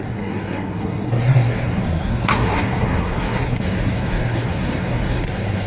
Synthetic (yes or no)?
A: yes